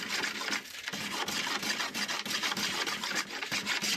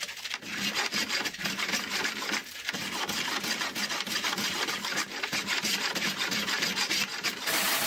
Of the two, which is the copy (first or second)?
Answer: second